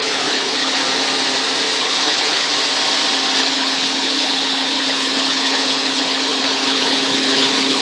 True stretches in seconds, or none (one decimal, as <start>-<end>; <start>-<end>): 0.8-1.8; 2.5-3.4